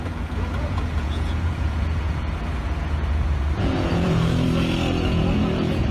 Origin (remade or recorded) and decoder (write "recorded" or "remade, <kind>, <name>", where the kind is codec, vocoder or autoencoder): remade, vocoder, Vocos